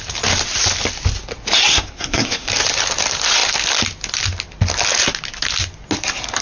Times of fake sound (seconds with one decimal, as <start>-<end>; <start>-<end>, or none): 1.7-2.5